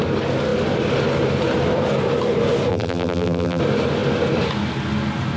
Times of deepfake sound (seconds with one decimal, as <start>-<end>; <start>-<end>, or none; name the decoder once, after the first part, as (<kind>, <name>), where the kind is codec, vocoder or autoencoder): 2.7-3.6 (vocoder, BigVGAN v2)